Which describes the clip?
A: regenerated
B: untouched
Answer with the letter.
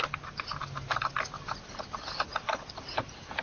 B